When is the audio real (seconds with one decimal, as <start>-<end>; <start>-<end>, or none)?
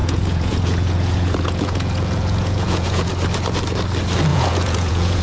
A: 3.1-4.3